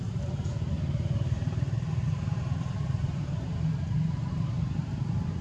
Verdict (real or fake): fake